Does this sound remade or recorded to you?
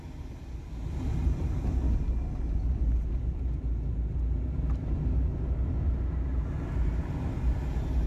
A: recorded